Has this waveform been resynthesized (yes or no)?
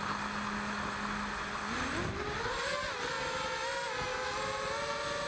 no